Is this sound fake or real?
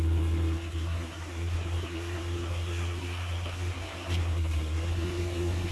fake